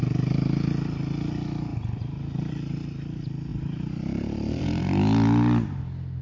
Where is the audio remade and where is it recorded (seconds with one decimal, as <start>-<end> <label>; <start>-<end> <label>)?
0.0-1.7 recorded; 1.7-2.5 remade; 2.5-3.5 recorded; 3.5-5.0 remade; 5.0-6.2 recorded